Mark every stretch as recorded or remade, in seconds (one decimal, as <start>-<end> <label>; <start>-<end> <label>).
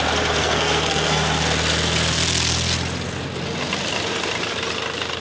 0.0-0.4 recorded; 0.4-1.4 remade; 1.4-5.2 recorded